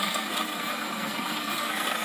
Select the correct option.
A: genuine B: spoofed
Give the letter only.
B